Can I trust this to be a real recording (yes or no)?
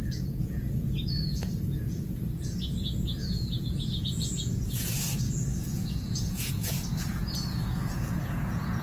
no